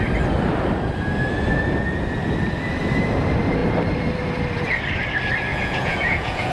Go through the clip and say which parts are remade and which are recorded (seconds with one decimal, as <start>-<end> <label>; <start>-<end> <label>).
0.0-5.5 recorded; 5.5-6.5 remade